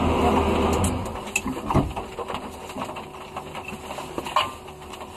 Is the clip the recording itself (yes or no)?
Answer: yes